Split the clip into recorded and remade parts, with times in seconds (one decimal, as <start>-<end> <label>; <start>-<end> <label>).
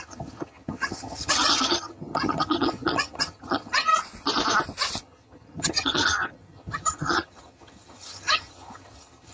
0.0-3.9 remade; 3.9-5.0 recorded; 5.0-9.3 remade